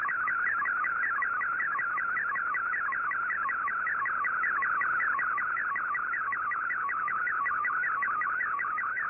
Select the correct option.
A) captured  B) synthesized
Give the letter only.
B